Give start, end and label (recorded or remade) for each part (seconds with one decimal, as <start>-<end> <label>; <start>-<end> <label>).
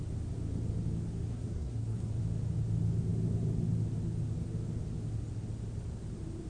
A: 0.0-1.3 recorded; 1.3-2.1 remade; 2.1-6.5 recorded